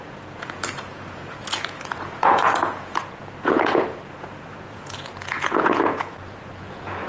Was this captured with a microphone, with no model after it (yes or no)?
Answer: no